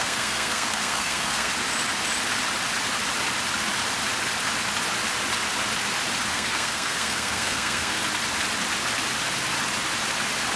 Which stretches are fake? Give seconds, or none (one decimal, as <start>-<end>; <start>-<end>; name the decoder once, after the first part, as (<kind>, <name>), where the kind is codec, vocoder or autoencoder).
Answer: 0.0-1.5 (codec, SNAC); 6.3-8.0